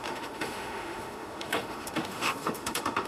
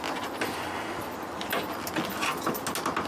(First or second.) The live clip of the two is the second